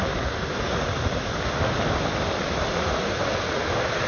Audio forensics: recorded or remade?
recorded